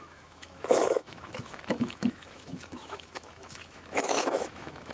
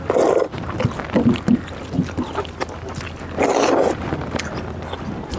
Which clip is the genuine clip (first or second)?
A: second